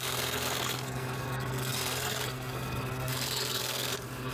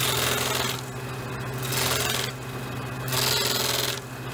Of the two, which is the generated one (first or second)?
first